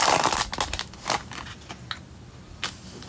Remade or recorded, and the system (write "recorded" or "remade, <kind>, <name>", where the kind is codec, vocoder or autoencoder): recorded